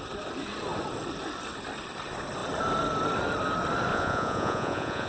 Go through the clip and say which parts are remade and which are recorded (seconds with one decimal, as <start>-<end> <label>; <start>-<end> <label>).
0.0-3.9 recorded; 3.9-5.1 remade